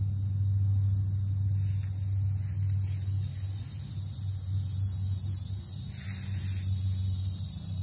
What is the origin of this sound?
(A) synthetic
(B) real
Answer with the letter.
B